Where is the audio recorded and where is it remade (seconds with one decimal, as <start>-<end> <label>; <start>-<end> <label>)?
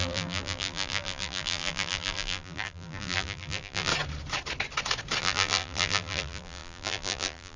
0.0-3.9 remade; 3.9-5.2 recorded; 5.2-7.6 remade